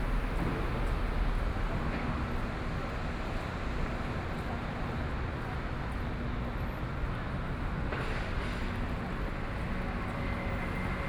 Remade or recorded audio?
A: recorded